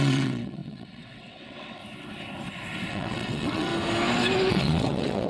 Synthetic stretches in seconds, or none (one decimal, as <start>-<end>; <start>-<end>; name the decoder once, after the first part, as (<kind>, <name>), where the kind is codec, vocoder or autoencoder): 0.0-1.8 (vocoder, WaveNeXt); 2.9-3.7; 4.5-5.3